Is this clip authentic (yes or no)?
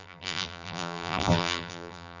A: no